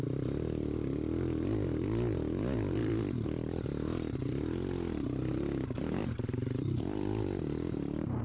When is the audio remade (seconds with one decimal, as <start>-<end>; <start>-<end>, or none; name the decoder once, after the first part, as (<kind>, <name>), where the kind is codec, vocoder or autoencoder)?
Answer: 2.8-5.3 (vocoder, BigVGAN v2); 6.0-7.4